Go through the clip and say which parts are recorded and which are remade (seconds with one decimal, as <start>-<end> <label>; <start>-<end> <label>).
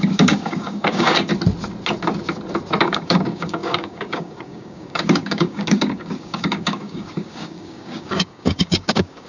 0.0-1.3 remade; 1.3-2.8 recorded; 2.8-9.3 remade